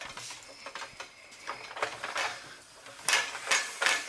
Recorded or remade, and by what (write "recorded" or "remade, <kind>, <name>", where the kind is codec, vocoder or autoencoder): recorded